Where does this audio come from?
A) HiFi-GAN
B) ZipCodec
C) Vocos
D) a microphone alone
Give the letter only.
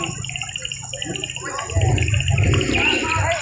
D